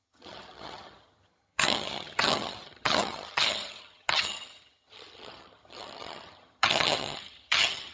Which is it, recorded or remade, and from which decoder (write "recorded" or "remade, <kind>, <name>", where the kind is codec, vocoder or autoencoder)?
remade, vocoder, HiFi-GAN